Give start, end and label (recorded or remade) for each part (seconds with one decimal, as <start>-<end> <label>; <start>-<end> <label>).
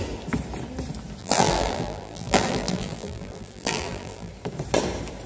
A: 0.0-1.2 recorded; 1.2-4.3 remade; 4.3-5.3 recorded